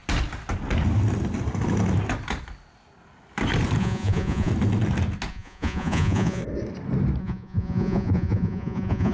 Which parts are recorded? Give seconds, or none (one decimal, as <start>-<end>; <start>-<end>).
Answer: 0.0-3.8; 4.5-5.3; 6.4-7.2